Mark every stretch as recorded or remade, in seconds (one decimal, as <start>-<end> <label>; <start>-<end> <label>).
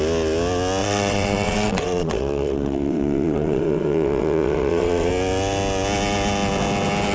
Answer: 0.0-0.8 recorded; 0.8-5.1 remade; 5.1-7.1 recorded